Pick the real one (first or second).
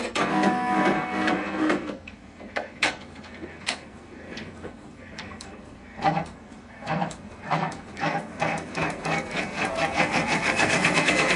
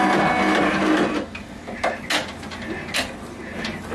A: second